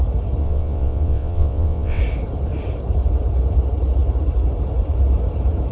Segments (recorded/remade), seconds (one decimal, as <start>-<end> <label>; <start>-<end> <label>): 0.0-0.4 recorded; 0.4-2.0 remade; 2.0-5.7 recorded